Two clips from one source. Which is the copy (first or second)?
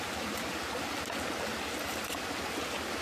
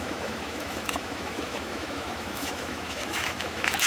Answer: second